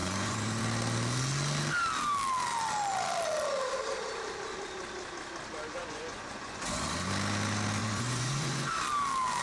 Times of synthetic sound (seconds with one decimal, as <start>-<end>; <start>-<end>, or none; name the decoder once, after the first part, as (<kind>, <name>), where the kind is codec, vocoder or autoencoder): 0.0-0.6 (vocoder, Vocos); 5.7-7.1; 7.8-8.8